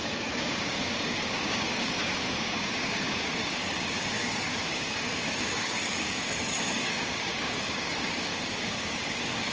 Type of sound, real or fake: fake